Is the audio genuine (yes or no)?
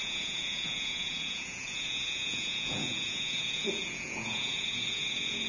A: no